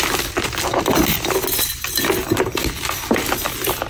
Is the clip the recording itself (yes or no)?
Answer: yes